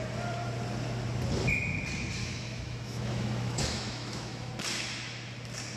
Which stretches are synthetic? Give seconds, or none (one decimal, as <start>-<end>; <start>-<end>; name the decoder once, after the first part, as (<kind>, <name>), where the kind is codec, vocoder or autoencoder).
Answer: 2.2-4.5 (autoencoder, DAC-VAE)